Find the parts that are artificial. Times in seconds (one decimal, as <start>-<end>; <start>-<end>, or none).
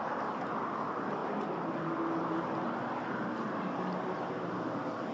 none